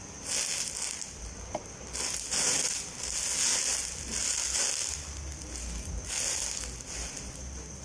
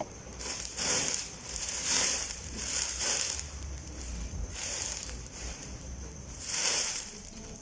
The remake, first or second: second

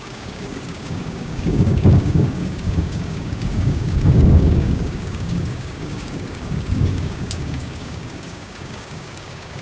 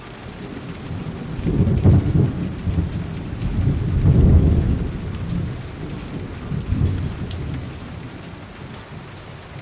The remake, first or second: first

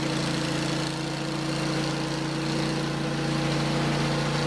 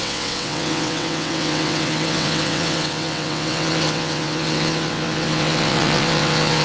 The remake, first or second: second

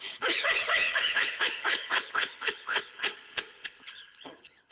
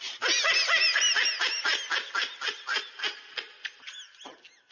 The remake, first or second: first